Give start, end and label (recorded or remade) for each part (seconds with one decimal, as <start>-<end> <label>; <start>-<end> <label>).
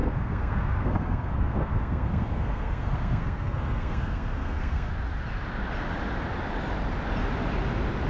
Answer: 0.0-4.9 remade; 4.9-8.1 recorded